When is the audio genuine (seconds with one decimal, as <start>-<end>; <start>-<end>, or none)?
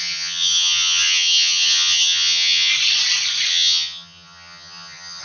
2.7-3.5